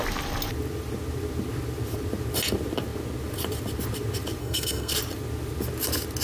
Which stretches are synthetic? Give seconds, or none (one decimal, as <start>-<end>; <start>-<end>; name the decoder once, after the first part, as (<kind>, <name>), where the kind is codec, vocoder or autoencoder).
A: 4.4-4.9 (codec, SNAC)